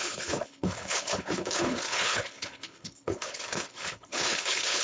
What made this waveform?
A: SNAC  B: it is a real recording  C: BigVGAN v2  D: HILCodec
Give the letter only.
D